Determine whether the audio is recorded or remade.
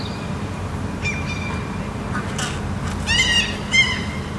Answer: recorded